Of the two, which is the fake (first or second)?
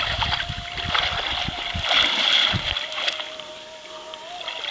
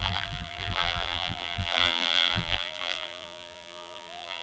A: second